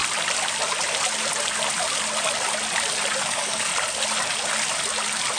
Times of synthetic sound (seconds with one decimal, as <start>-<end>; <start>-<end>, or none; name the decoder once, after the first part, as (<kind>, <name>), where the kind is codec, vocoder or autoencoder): 3.2-3.7 (codec, DAC)